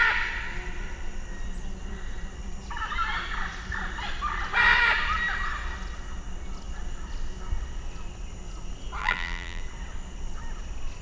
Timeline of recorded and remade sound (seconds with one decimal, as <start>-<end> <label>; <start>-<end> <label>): 0.0-9.0 recorded; 9.0-9.6 remade; 9.6-11.0 recorded